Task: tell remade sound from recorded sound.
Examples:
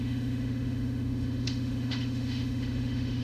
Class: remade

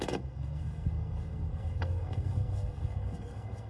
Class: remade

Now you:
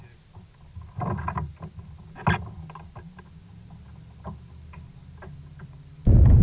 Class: recorded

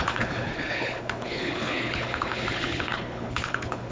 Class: remade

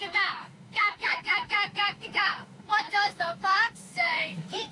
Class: remade